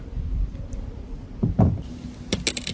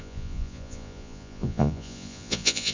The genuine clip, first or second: first